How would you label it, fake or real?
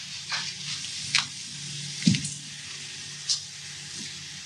real